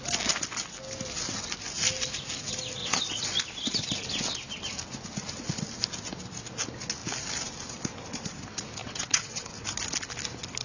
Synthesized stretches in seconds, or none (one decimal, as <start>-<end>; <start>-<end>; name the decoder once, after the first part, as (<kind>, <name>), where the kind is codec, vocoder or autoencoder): 2.8-3.4 (vocoder, WaveNeXt); 8.8-9.5